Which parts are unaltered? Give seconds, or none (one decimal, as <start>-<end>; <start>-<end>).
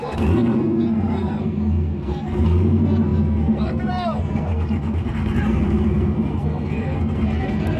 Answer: none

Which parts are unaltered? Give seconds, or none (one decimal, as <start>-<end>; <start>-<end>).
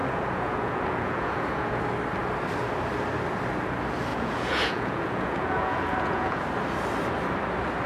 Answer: 1.8-4.1; 6.4-7.9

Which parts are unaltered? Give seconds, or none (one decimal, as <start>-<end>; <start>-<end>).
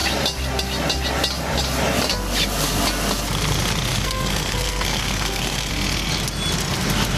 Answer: 0.0-3.9; 5.7-7.2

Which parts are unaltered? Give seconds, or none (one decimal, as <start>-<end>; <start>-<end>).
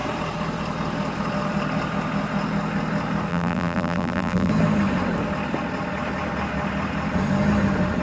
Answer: 0.0-3.3; 4.5-8.0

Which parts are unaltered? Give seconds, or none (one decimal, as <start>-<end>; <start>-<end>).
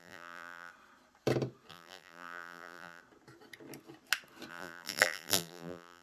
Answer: 0.7-1.7; 3.0-4.5